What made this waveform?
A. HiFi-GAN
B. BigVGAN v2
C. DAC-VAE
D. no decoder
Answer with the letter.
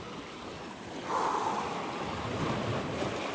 D